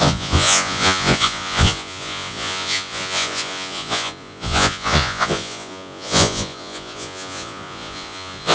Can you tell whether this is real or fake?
fake